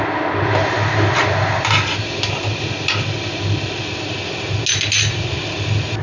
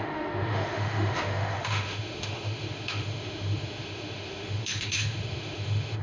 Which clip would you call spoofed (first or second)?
second